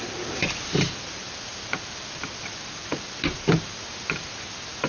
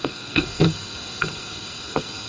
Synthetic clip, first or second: second